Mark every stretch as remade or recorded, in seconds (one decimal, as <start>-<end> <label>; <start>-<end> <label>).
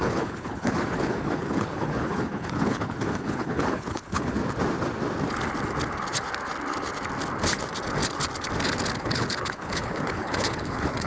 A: 0.0-4.4 remade; 4.4-9.0 recorded; 9.0-11.1 remade